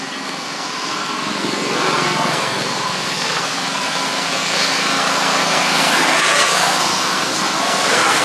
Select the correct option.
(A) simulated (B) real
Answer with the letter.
A